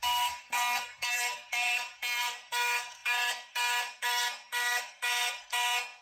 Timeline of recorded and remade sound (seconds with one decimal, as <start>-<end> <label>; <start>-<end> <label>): 0.0-6.0 remade